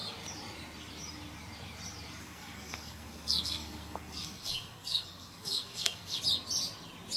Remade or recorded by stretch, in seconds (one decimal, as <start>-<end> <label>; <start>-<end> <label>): 0.0-2.2 recorded; 2.2-6.2 remade; 6.2-7.2 recorded